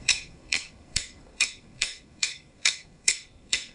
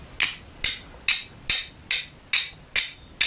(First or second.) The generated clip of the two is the first